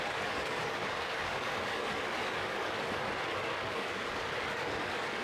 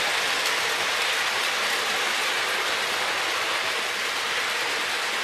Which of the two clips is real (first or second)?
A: second